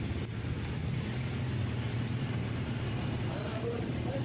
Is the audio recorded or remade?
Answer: recorded